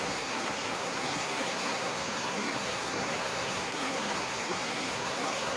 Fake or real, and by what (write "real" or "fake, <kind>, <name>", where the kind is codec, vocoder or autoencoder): fake, codec, SNAC